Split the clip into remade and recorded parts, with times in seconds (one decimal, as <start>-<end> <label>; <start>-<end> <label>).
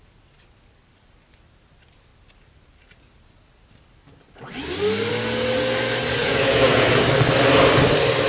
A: 0.0-6.2 recorded; 6.2-7.0 remade; 7.0-8.3 recorded